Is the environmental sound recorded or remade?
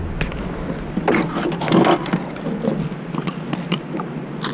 recorded